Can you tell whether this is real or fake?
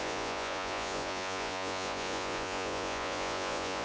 fake